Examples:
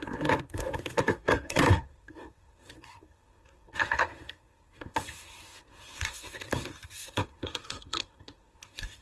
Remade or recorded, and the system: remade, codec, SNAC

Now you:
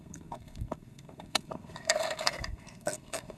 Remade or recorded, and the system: remade, codec, SNAC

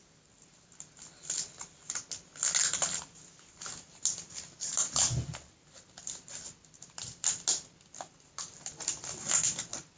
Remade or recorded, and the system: recorded